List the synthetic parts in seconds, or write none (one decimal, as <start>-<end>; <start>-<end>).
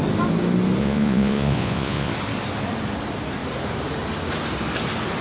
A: 0.8-2.1